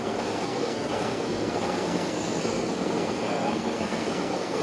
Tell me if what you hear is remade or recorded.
remade